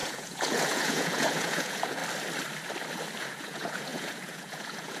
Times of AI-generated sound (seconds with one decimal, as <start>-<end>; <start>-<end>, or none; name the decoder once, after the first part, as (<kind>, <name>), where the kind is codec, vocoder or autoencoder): 0.0-2.0 (vocoder, Vocos); 3.2-5.0